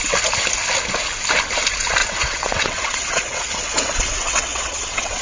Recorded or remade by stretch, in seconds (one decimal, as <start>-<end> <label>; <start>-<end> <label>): 0.0-2.0 recorded; 2.0-5.2 remade